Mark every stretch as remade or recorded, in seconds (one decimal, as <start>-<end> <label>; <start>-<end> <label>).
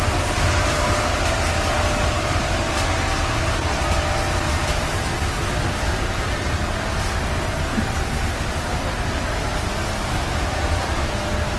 0.0-10.1 recorded; 10.1-10.6 remade; 10.6-11.6 recorded